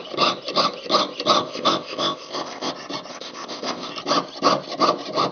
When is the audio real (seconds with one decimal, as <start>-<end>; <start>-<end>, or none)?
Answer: 0.0-1.4; 2.7-3.1; 3.9-5.3